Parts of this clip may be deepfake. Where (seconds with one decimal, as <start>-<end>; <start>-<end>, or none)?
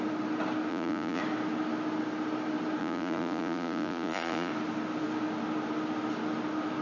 0.7-1.2; 2.8-4.5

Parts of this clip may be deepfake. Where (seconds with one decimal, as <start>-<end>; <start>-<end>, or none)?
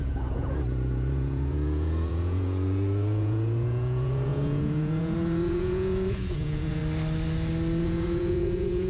0.0-6.8; 7.8-8.9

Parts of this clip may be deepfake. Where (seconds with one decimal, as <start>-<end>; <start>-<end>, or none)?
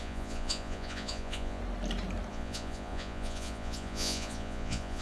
0.0-1.6; 2.3-5.0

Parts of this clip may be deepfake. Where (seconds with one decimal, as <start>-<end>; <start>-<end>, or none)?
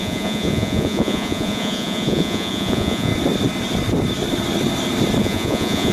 0.0-3.1; 5.2-5.9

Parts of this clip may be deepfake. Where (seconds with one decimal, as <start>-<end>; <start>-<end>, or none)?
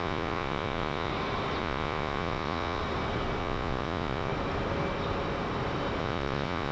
0.0-1.1; 1.6-2.8; 3.4-4.3; 6.0-6.7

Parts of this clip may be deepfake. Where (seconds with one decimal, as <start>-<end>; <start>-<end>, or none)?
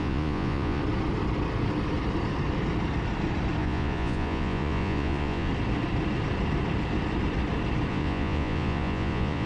0.0-0.8; 3.6-5.5; 7.9-9.5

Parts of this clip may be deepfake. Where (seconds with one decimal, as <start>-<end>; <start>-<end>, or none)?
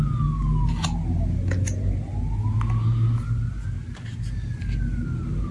none